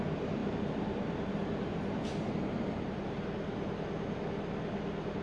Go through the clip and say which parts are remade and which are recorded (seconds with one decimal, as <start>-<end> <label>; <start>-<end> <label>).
0.0-0.4 recorded; 0.4-3.2 remade; 3.2-5.2 recorded

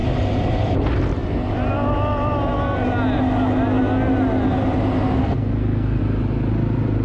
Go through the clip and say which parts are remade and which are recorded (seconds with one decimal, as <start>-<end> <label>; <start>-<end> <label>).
0.0-5.2 recorded; 5.2-6.0 remade; 6.0-7.0 recorded